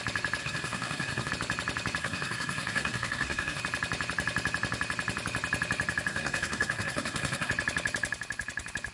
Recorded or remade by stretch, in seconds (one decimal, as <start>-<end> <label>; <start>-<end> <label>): 0.0-0.4 recorded; 0.4-1.3 remade; 1.3-2.0 recorded; 2.0-3.6 remade; 3.6-6.1 recorded; 6.1-7.5 remade; 7.5-8.9 recorded